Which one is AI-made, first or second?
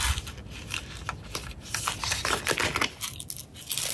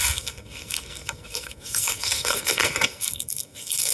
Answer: second